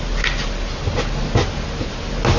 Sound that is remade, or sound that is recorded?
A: recorded